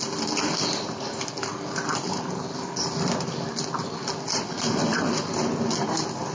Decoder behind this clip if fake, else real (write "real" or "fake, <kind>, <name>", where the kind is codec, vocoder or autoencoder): real